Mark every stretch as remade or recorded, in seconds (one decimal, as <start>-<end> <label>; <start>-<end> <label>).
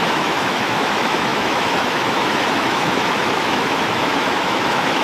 0.0-5.0 remade